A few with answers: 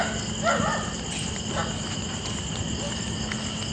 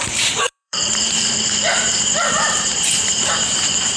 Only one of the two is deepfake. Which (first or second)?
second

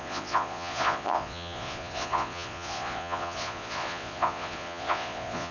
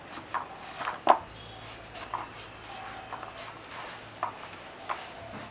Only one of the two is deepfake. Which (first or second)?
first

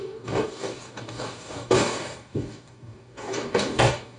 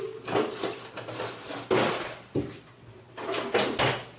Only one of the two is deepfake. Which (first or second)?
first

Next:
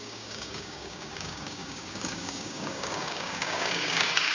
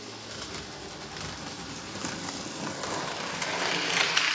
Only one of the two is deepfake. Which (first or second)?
first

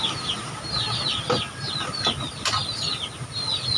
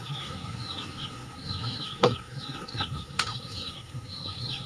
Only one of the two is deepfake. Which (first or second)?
second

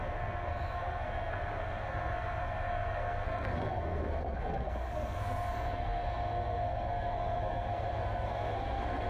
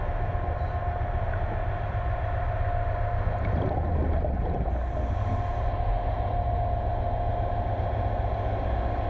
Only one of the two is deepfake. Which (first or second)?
first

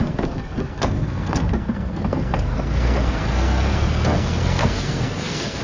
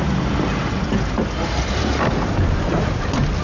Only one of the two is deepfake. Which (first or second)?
first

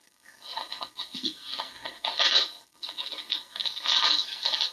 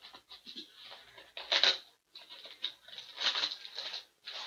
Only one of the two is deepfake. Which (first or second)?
first